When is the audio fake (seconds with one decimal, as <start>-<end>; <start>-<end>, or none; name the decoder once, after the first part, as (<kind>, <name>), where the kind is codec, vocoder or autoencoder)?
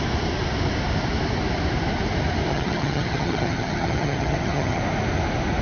2.5-4.8 (vocoder, HiFi-GAN)